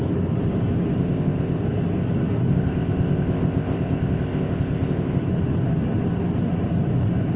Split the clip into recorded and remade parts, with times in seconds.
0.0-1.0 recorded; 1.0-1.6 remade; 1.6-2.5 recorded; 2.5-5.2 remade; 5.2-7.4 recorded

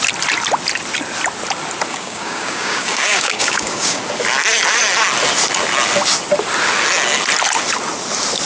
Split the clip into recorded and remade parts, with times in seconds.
0.0-1.9 recorded; 1.9-4.0 remade; 4.0-8.5 recorded